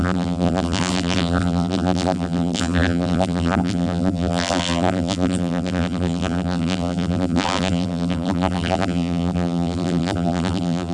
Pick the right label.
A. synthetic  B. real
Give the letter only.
A